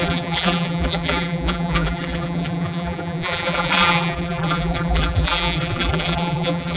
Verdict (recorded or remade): remade